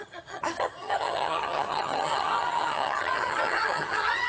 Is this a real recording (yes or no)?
no